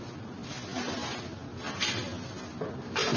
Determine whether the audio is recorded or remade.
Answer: recorded